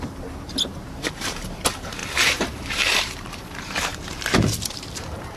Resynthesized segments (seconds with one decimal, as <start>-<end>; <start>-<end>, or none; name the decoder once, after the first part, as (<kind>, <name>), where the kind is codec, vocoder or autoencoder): 0.0-5.4 (vocoder, BigVGAN v2)